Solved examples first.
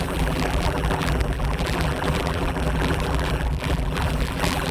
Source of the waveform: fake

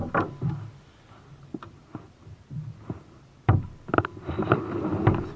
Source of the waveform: real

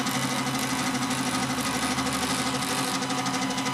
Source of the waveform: real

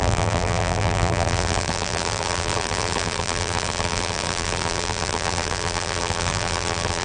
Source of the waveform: fake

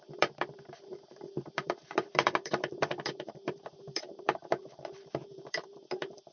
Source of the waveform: fake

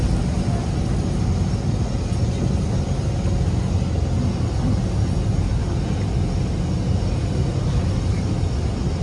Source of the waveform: real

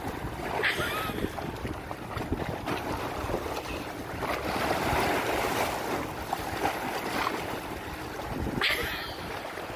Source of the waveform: real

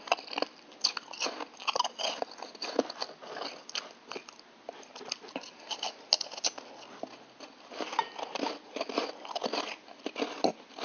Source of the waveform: real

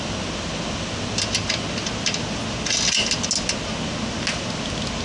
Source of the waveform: real